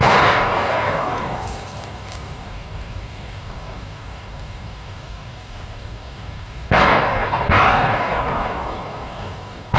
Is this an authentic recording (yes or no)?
no